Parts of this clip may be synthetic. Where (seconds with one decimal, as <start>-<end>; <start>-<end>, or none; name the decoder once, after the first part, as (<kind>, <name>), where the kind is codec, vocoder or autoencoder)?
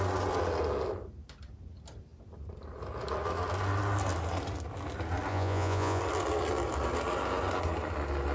5.3-6.0 (vocoder, Vocos)